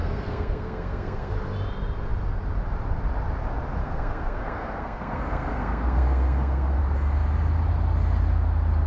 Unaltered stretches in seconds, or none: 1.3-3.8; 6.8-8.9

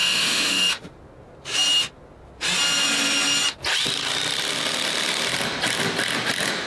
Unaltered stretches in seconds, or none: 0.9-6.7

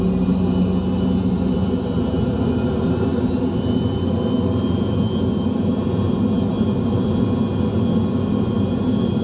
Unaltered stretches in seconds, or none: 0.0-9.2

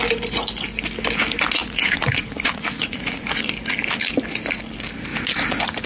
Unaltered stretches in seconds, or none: 0.0-1.6; 3.4-5.9

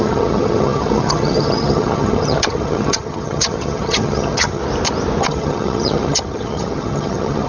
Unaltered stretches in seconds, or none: 4.6-5.2